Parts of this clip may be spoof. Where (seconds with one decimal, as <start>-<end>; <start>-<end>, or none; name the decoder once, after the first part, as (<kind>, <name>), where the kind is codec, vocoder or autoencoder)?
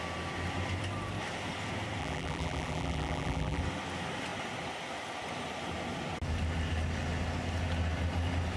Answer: 2.0-3.6 (vocoder, BigVGAN v2)